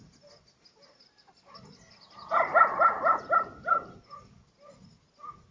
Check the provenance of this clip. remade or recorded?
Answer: recorded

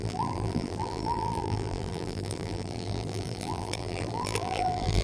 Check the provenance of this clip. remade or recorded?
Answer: remade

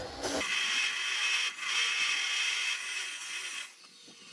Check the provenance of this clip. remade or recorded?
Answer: remade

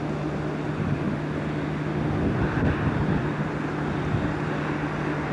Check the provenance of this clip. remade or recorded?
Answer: recorded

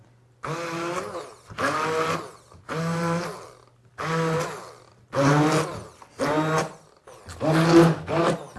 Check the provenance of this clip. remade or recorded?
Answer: recorded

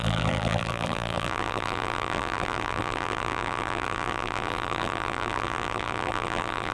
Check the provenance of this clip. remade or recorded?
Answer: remade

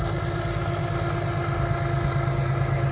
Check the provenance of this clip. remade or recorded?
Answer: recorded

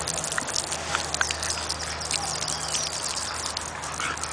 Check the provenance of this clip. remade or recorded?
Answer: recorded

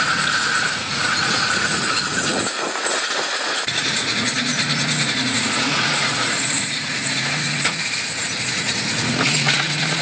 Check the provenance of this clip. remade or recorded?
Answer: remade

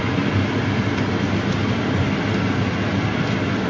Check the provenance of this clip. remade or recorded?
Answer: recorded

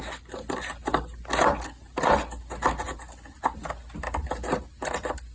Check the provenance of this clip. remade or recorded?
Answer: recorded